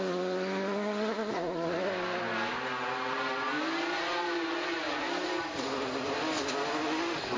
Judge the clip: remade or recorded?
recorded